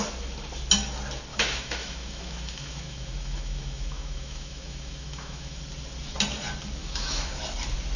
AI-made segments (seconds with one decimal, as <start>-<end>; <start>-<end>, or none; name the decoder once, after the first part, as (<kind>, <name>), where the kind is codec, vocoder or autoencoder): 1.3-5.6 (autoencoder, DAC-VAE); 6.8-7.4